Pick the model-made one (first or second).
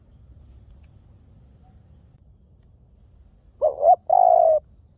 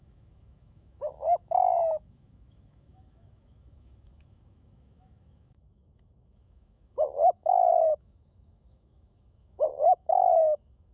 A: second